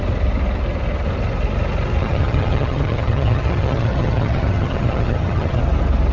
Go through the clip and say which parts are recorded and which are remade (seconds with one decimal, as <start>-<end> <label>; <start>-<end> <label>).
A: 0.0-2.0 recorded; 2.0-5.6 remade; 5.6-6.1 recorded